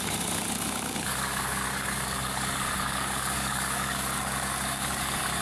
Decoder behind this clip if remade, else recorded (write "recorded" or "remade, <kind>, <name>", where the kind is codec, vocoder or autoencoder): remade, codec, DAC